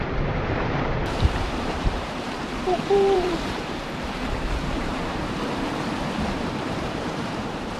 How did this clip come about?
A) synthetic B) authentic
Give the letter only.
A